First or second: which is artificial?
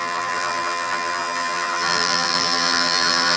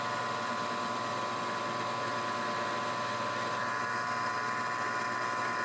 first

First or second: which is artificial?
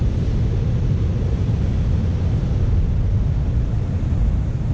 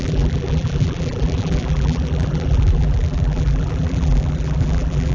second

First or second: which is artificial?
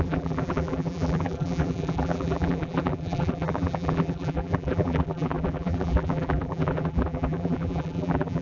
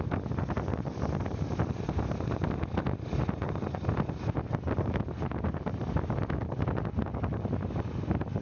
first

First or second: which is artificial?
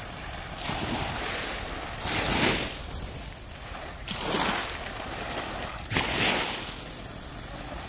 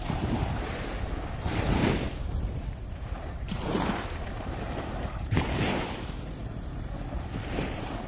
second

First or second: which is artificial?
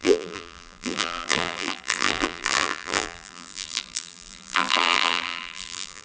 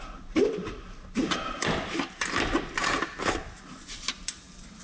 first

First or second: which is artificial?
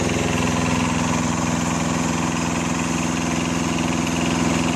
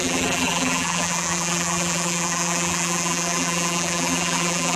second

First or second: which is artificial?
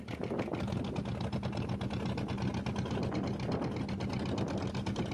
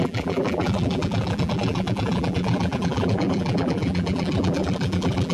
second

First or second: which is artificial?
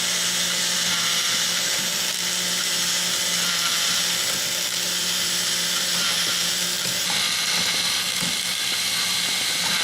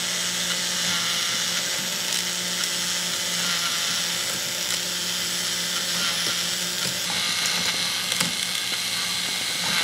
first